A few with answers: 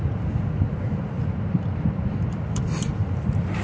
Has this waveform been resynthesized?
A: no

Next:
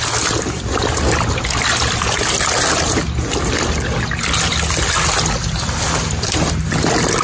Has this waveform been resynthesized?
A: no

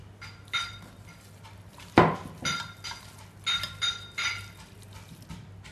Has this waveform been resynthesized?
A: no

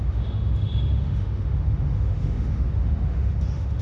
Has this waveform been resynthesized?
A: yes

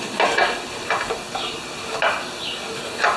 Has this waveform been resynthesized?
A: no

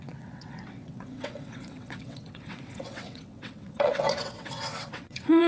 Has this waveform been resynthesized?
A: yes